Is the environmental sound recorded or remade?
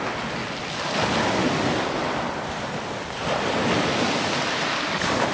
recorded